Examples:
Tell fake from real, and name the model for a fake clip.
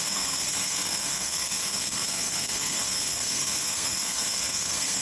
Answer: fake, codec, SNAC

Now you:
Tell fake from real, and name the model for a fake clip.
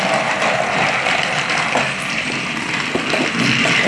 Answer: real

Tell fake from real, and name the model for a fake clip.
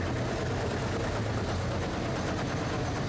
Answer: real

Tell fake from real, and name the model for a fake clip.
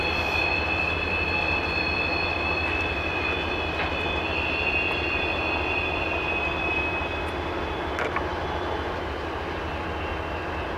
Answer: real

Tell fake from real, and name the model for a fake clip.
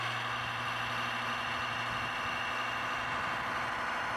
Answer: real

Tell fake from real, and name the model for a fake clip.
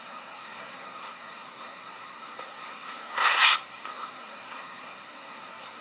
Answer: fake, codec, SNAC